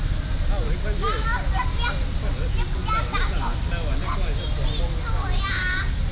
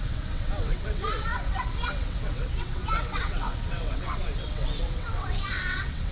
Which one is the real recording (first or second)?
first